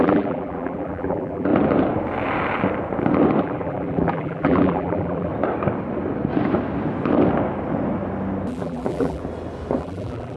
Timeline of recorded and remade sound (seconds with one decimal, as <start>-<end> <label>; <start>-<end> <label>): 0.0-1.5 remade; 1.5-3.4 recorded; 3.4-5.3 remade; 5.3-8.5 recorded; 8.5-9.2 remade; 9.2-9.8 recorded; 9.8-10.4 remade